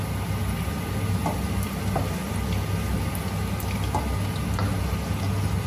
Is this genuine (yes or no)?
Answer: yes